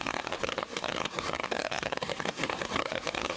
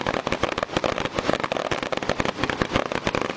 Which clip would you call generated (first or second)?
first